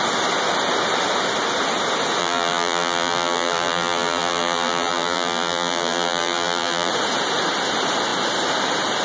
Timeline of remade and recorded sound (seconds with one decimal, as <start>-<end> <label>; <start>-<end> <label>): 0.0-2.2 recorded; 2.2-6.9 remade; 6.9-9.0 recorded